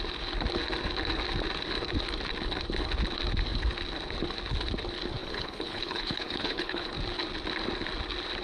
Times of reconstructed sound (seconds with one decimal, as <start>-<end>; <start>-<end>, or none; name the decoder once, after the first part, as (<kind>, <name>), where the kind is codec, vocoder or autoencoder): 5.2-6.9 (codec, HILCodec)